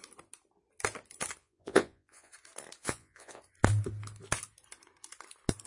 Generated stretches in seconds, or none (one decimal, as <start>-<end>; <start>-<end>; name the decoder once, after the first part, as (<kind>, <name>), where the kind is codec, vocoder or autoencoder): 1.4-2.3 (vocoder, Vocos); 2.8-3.4